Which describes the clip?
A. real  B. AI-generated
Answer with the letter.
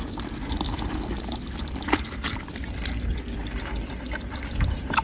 A